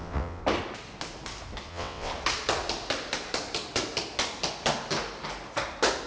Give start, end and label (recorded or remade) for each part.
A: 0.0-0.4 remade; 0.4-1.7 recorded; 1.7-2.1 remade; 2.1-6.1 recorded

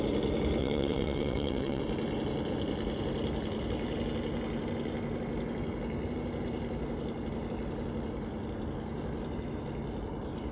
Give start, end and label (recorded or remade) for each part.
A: 0.0-0.6 recorded; 0.6-1.8 remade; 1.8-10.5 recorded

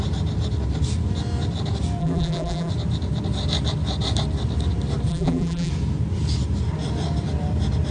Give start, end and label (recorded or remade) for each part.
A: 0.0-2.0 recorded; 2.0-2.7 remade; 2.7-5.1 recorded; 5.1-5.7 remade; 5.7-7.9 recorded

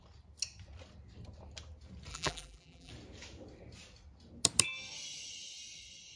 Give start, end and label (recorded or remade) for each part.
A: 0.0-2.1 recorded; 2.1-2.9 remade; 2.9-6.2 recorded